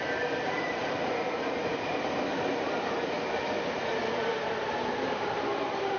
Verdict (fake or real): fake